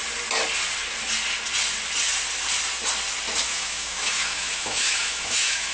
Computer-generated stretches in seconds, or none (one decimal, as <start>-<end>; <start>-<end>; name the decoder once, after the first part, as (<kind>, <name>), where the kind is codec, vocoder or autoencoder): 3.4-5.7 (autoencoder, DAC-VAE)